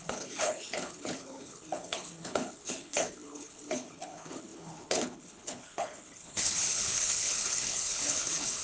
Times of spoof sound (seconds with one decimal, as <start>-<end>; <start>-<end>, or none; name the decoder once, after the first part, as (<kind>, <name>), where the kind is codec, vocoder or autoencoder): 0.0-8.6 (codec, HILCodec)